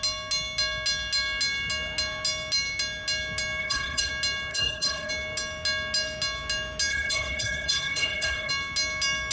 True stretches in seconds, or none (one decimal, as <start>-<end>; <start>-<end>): 0.0-3.6; 4.1-4.5; 5.1-6.9; 8.5-9.3